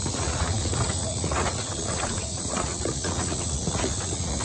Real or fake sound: fake